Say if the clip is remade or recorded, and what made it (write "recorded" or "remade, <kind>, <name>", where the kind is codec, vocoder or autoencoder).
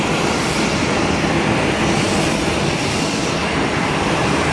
recorded